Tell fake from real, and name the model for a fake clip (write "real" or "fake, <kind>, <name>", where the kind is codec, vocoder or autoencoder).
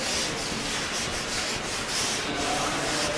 real